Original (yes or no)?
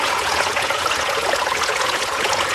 no